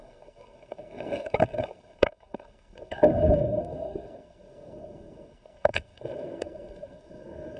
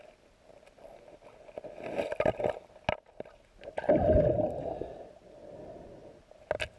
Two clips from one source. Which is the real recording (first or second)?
second